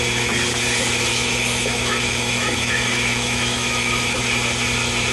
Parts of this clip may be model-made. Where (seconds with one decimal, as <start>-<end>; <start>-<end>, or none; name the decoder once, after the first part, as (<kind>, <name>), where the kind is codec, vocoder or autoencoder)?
1.1-4.2 (autoencoder, DAC-VAE)